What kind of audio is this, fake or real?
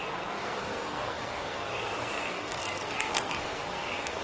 fake